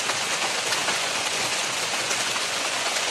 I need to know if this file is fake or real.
fake